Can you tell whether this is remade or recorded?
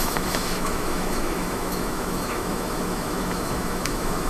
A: remade